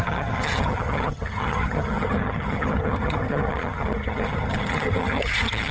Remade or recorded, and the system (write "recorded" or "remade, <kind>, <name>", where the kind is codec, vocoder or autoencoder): remade, vocoder, HiFi-GAN